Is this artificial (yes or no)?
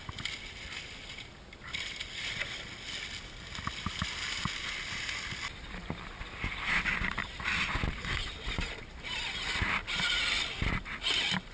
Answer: no